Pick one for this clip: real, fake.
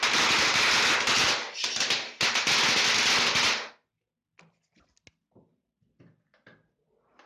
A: real